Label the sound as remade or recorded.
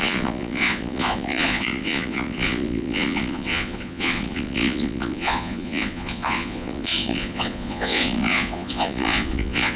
remade